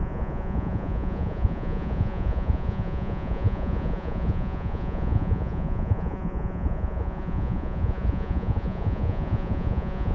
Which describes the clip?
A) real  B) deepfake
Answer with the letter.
B